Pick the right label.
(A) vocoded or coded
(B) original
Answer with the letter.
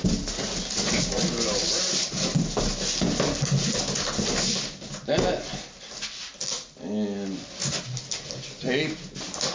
B